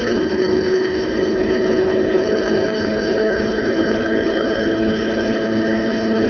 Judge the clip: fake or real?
fake